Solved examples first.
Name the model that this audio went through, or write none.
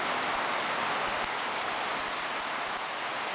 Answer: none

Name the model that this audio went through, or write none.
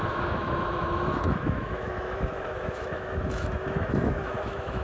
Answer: autoencoder, DAC-VAE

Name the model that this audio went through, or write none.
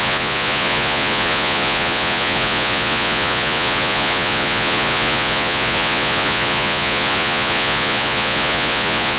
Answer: vocoder, Vocos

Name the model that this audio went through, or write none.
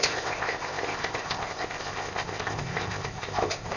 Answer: codec, ZipCodec